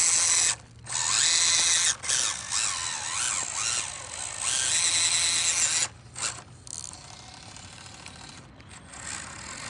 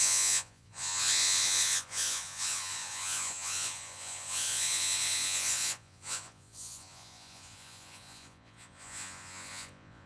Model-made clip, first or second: second